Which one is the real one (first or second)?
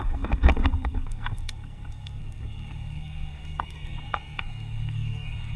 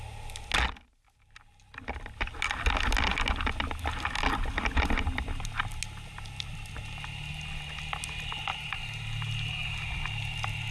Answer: second